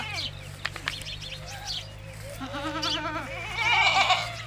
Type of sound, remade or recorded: recorded